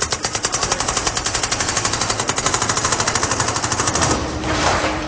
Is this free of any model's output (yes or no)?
no